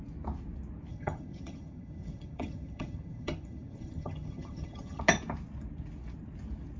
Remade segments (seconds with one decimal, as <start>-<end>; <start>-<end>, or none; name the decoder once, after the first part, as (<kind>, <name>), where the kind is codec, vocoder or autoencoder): 0.9-5.0 (vocoder, HiFi-GAN)